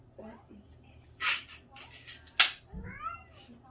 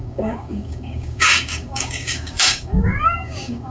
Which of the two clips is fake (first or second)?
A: second